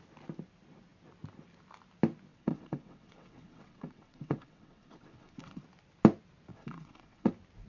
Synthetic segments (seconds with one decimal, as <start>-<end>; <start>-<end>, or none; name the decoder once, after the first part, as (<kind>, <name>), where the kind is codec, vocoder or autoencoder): 2.3-5.6 (vocoder, WaveNeXt); 6.5-7.3